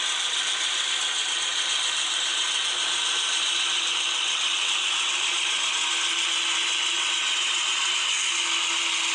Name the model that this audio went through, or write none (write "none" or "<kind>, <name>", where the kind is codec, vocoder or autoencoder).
none